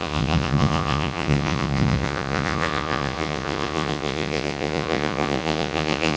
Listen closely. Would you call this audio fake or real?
fake